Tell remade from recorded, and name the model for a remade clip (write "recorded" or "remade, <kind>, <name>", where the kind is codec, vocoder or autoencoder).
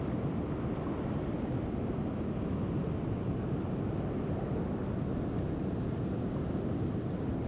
recorded